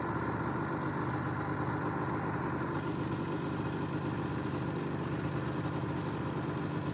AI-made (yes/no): no